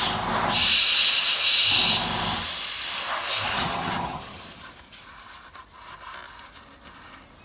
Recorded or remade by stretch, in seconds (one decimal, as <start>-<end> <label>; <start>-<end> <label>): 0.0-3.5 recorded; 3.5-4.4 remade; 4.4-7.4 recorded